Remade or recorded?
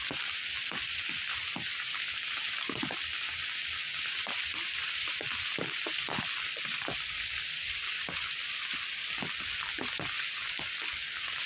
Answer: recorded